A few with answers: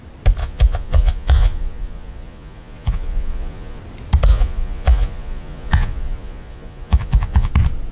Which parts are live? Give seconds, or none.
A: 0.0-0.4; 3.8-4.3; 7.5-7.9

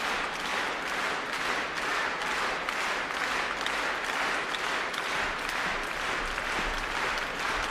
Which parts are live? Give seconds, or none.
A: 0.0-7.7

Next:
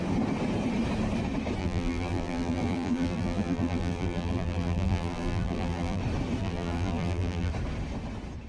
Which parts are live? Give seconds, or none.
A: 0.0-1.6; 6.0-6.4; 7.5-8.5

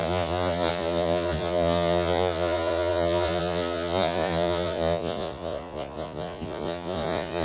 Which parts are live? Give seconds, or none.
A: none